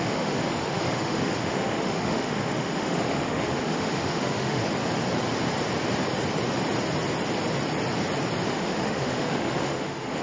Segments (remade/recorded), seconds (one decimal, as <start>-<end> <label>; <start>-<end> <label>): 0.0-4.6 remade; 4.6-8.5 recorded; 8.5-10.2 remade